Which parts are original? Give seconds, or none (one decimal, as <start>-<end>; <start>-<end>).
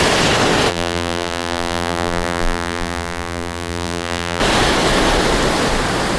0.0-0.7; 4.4-6.2